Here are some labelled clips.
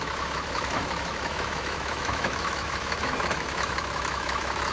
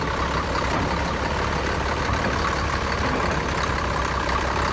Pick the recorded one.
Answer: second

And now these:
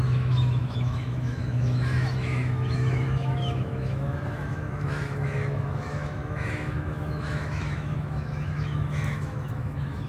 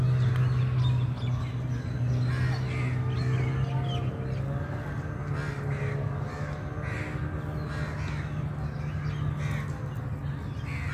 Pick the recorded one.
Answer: second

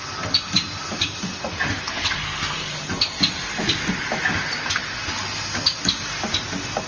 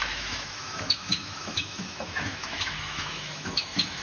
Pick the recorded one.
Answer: first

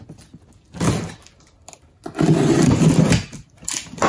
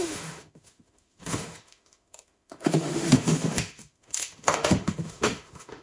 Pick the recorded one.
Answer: first